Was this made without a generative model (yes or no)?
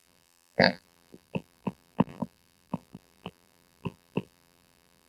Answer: no